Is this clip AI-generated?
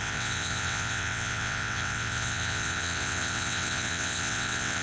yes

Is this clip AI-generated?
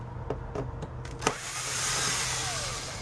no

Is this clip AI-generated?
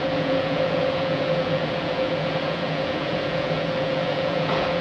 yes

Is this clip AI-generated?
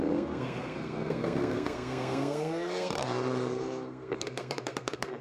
yes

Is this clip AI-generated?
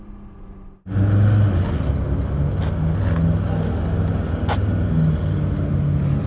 no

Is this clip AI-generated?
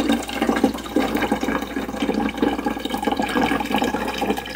yes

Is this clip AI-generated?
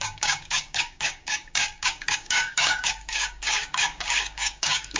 yes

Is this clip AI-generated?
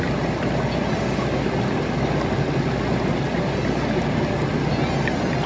no